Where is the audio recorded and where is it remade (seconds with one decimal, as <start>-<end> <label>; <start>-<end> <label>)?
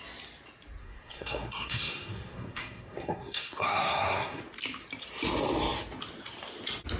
0.0-0.8 recorded; 0.8-4.4 remade; 4.4-7.0 recorded